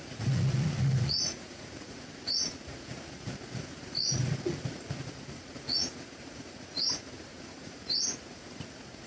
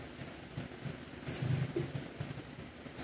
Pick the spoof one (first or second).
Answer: first